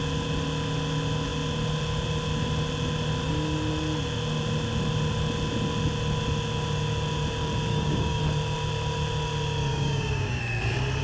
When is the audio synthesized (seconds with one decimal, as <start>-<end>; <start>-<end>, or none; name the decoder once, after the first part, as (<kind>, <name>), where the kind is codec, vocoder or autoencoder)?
7.7-8.2 (codec, DAC); 9.7-10.4